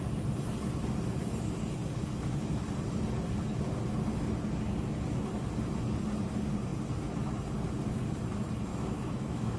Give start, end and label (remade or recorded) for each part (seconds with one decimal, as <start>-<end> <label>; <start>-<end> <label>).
0.0-8.7 recorded; 8.7-9.6 remade